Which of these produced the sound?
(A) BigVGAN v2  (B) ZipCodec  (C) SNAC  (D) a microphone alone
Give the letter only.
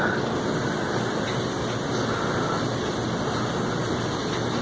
D